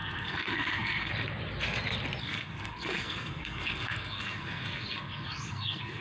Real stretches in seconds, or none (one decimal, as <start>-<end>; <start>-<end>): 1.1-2.2